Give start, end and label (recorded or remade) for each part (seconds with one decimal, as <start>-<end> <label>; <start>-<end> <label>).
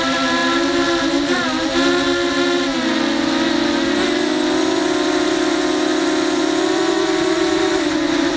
0.0-0.4 remade; 0.4-3.9 recorded; 3.9-8.4 remade